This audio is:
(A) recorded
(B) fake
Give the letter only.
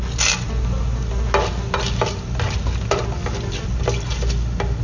A